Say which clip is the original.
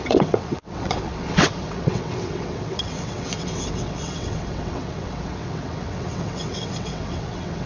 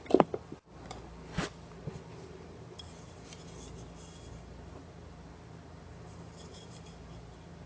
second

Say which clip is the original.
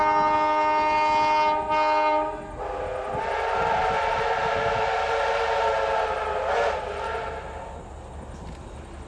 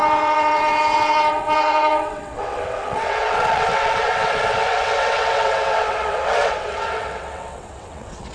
first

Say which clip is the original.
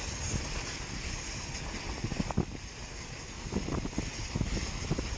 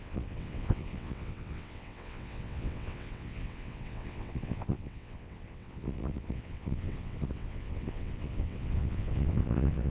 first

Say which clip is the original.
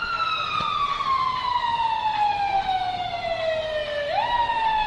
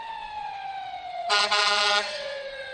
first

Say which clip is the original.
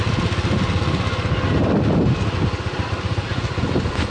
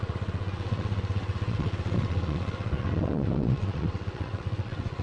first